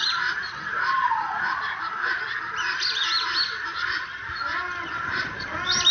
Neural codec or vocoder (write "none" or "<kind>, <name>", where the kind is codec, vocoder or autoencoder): none